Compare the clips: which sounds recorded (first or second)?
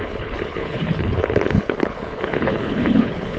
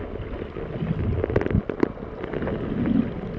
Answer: second